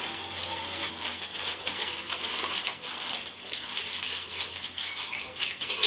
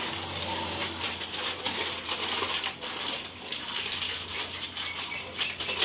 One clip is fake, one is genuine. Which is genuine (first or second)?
second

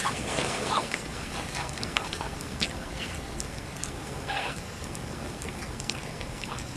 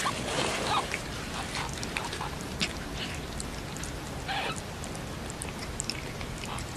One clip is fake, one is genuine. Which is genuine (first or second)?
second